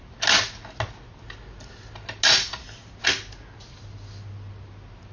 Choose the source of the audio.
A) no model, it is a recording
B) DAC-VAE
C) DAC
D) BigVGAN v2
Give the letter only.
A